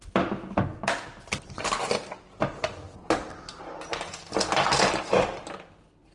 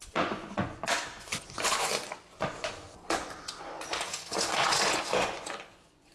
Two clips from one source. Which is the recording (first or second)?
first